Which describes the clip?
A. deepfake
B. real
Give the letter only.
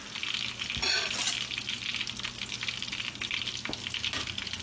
B